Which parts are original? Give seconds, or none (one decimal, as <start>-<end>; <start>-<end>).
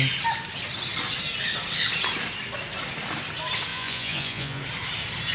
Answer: 0.0-3.7; 4.6-5.3